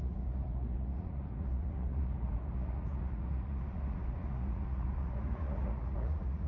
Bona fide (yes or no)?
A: no